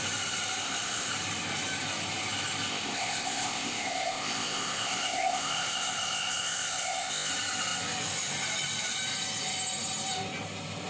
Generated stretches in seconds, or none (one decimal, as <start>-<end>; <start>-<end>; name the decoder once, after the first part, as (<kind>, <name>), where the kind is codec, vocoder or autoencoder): 0.6-1.1 (codec, ZipCodec); 2.7-7.3